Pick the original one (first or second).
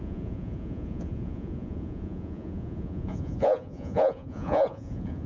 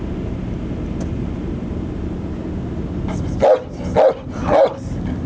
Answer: second